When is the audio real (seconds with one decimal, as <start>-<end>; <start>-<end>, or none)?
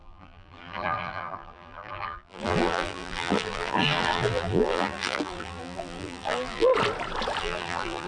6.7-7.4